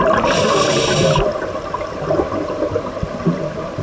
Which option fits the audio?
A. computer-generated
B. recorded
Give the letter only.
B